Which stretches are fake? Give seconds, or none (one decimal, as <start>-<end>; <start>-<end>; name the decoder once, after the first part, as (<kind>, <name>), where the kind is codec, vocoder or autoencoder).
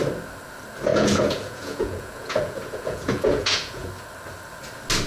0.9-3.9 (vocoder, Vocos)